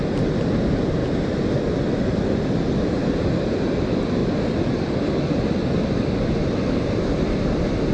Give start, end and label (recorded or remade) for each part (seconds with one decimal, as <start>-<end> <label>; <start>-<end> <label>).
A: 0.0-7.9 recorded